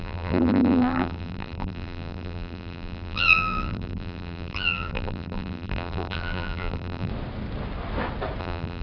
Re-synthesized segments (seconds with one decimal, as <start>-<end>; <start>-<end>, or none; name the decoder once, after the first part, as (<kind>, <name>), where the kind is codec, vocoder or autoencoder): 0.0-7.1 (vocoder, BigVGAN v2); 8.4-8.8